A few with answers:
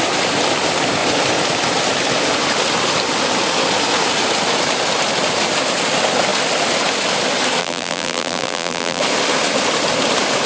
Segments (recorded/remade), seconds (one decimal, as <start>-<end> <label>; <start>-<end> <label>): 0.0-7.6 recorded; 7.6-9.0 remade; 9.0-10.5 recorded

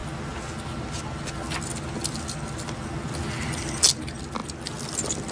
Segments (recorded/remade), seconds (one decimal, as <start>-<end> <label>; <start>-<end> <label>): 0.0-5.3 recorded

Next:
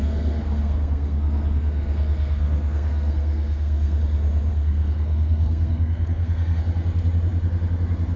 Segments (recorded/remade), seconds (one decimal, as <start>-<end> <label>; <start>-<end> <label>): 0.0-4.0 remade; 4.0-4.5 recorded; 4.5-6.6 remade; 6.6-8.2 recorded

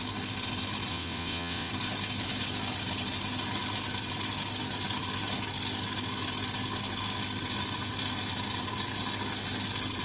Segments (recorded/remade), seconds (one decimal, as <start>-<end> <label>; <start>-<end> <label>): 0.0-0.9 recorded; 0.9-1.7 remade; 1.7-10.0 recorded

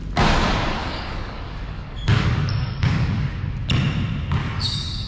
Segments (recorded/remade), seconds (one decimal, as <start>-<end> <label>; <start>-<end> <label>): 0.0-0.8 recorded; 0.8-3.4 remade; 3.4-4.4 recorded; 4.4-5.1 remade

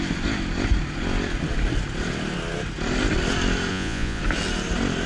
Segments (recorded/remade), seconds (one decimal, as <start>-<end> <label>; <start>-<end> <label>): 0.0-3.7 recorded; 3.7-4.2 remade; 4.2-5.1 recorded

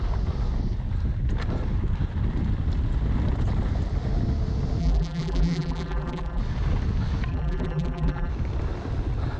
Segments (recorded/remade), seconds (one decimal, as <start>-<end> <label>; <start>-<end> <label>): 0.0-4.8 recorded; 4.8-6.4 remade; 6.4-7.3 recorded; 7.3-8.3 remade; 8.3-9.4 recorded

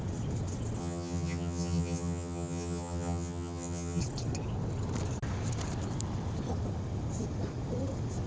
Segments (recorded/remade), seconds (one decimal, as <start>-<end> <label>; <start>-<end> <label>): 0.0-0.8 recorded; 0.8-4.0 remade; 4.0-8.3 recorded